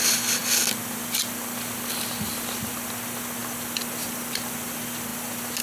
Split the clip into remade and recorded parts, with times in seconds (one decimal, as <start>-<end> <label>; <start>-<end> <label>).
0.0-5.6 recorded

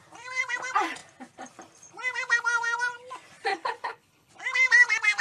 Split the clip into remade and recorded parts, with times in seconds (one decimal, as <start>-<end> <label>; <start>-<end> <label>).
0.0-3.5 recorded; 3.5-4.3 remade; 4.3-5.2 recorded

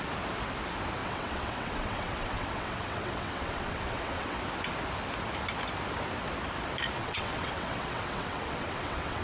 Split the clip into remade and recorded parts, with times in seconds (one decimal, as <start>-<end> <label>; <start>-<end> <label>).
0.0-1.0 recorded; 1.0-4.4 remade; 4.4-7.0 recorded; 7.0-9.2 remade

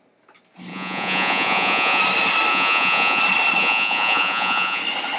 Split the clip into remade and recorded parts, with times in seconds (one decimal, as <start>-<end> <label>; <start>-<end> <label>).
0.0-0.7 recorded; 0.7-2.0 remade; 2.0-2.5 recorded; 2.5-3.2 remade; 3.2-3.6 recorded; 3.6-4.8 remade; 4.8-5.2 recorded

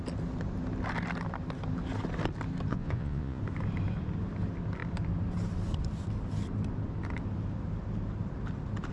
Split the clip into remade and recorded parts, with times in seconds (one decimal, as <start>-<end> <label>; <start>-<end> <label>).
0.0-2.7 recorded; 2.7-3.4 remade; 3.4-8.9 recorded

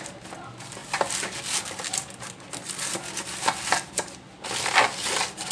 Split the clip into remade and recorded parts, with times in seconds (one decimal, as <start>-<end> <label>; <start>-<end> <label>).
0.0-5.5 recorded